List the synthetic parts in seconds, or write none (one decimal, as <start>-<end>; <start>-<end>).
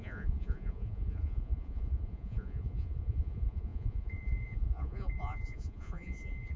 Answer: 0.0-6.6